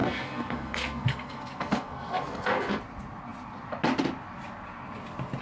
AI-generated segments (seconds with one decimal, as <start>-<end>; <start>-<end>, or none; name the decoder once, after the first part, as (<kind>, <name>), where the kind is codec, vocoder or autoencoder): 0.0-2.8 (codec, SNAC)